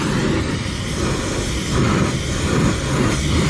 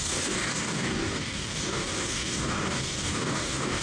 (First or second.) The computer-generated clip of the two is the second